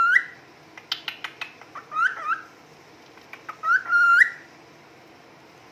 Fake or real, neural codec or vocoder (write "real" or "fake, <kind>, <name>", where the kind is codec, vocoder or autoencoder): real